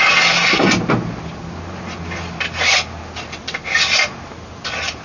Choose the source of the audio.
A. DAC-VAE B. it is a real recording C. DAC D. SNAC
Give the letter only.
B